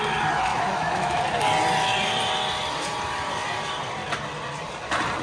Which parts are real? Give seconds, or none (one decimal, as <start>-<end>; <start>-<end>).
0.0-0.5; 1.2-5.2